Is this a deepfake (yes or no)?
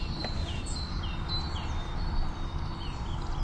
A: no